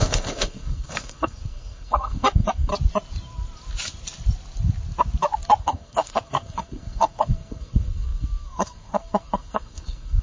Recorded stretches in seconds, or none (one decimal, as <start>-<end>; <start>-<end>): 2.7-5.6

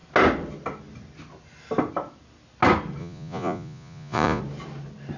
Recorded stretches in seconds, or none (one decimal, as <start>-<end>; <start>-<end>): 0.0-3.0; 4.4-5.2

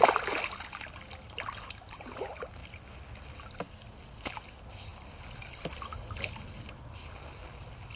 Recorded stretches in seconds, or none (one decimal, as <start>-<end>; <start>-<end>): 0.0-8.0

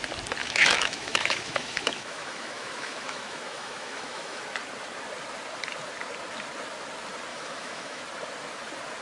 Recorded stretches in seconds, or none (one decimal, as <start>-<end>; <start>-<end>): 0.0-0.4; 4.4-7.3; 8.0-9.0

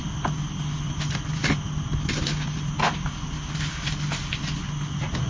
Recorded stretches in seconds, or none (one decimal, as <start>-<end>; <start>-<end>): 0.0-5.3

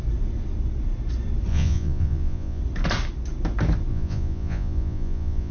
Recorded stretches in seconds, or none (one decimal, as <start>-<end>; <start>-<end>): 0.0-1.5; 2.6-3.9